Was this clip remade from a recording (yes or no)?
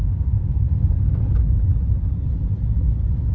no